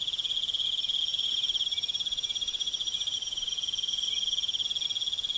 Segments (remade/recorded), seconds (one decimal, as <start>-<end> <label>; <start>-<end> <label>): 0.0-1.1 recorded; 1.1-3.5 remade; 3.5-5.4 recorded